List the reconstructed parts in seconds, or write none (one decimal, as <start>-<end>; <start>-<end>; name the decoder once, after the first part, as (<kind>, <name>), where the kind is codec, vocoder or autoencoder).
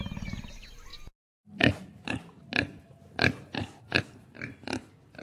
none